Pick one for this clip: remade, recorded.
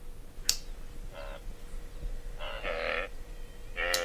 recorded